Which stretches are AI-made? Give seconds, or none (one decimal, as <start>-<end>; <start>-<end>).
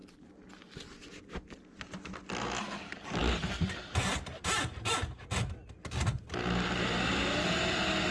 none